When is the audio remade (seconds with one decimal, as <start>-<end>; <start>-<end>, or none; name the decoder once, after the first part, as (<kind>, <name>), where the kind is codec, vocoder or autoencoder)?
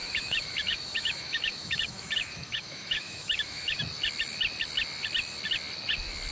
0.0-3.8 (autoencoder, DAC-VAE)